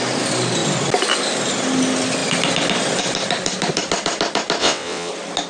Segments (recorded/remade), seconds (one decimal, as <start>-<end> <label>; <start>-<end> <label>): 0.0-4.6 recorded; 4.6-5.1 remade; 5.1-5.5 recorded